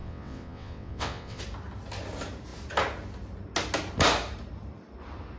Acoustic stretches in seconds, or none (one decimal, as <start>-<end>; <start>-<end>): 1.4-5.4